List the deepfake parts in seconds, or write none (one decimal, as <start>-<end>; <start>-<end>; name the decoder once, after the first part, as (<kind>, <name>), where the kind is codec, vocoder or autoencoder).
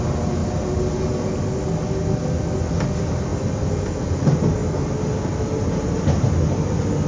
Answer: none